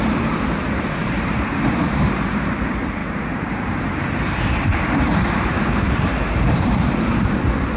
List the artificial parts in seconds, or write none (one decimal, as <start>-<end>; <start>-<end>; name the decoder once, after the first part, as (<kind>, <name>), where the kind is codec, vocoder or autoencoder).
0.0-7.8 (vocoder, BigVGAN v2)